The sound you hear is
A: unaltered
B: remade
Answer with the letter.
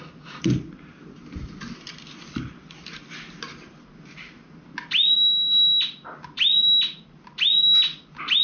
A